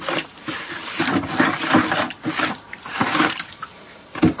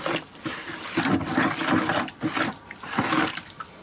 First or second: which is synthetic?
first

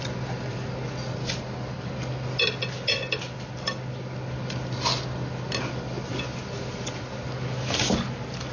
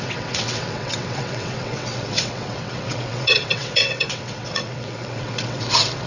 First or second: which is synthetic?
second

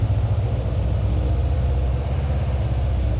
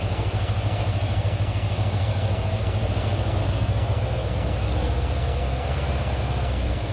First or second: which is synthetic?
second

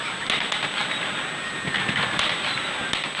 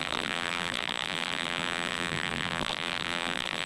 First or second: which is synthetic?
second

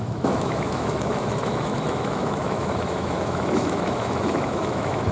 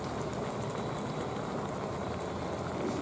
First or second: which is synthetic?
first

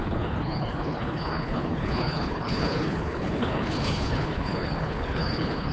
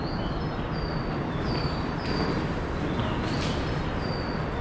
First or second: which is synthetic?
first